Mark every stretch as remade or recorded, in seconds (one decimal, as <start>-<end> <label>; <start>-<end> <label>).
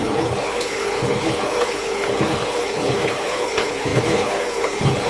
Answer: 0.0-5.1 remade